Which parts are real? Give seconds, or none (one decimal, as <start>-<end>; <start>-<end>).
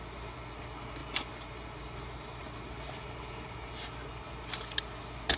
0.0-1.0; 4.2-5.4